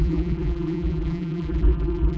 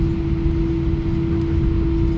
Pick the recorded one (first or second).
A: second